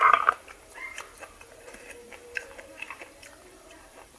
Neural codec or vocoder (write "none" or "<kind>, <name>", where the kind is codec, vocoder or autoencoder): vocoder, BigVGAN v2